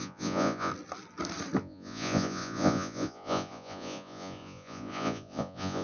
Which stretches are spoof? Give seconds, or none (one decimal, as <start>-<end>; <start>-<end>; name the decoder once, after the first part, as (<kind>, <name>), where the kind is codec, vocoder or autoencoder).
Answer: 0.0-0.7 (vocoder, Vocos); 1.6-5.8